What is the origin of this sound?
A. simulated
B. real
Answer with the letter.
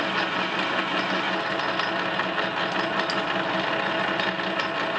B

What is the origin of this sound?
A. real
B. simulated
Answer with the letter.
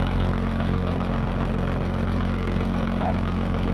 B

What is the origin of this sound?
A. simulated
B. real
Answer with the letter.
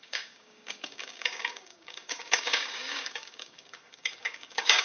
A